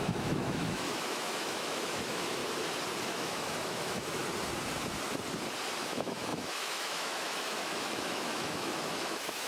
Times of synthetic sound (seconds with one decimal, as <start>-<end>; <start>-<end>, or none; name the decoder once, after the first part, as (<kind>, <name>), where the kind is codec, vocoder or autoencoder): 0.0-2.4 (autoencoder, DAC-VAE); 3.0-4.2; 5.8-9.5